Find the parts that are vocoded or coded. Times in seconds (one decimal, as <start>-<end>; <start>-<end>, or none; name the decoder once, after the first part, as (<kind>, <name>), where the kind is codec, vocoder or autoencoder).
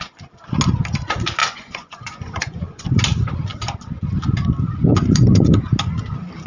1.4-3.0 (vocoder, Vocos); 4.9-5.7